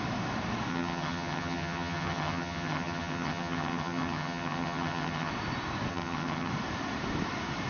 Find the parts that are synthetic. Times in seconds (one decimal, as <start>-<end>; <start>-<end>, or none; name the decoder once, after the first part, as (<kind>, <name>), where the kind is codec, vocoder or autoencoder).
0.7-5.3 (vocoder, HiFi-GAN); 5.9-6.5